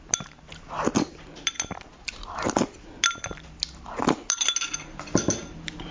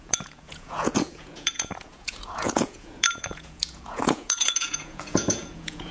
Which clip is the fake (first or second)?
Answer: second